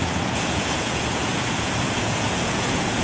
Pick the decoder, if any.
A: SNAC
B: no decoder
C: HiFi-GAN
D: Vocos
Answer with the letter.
D